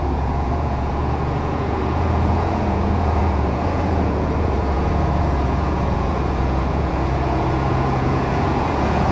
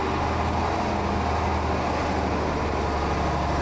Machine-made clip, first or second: first